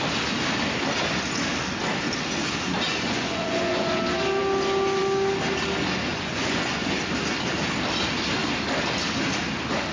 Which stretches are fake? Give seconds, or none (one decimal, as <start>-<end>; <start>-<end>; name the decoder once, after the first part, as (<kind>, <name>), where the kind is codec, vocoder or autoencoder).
2.9-4.0 (vocoder, Vocos); 6.1-7.0